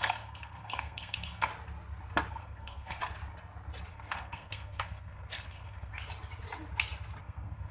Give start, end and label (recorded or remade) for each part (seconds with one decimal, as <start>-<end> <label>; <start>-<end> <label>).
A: 0.0-1.5 remade; 1.5-2.3 recorded; 2.3-3.0 remade; 3.0-3.9 recorded; 3.9-5.9 remade; 5.9-7.2 recorded; 7.2-7.7 remade